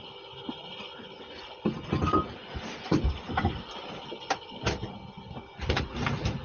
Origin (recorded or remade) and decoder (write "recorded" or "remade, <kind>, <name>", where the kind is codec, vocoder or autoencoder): recorded